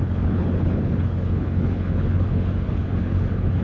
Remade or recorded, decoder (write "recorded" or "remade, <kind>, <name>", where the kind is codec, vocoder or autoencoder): remade, codec, HILCodec